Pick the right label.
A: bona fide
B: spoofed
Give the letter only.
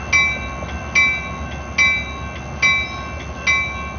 A